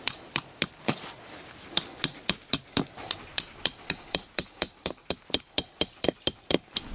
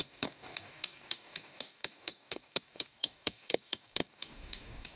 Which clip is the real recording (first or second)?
first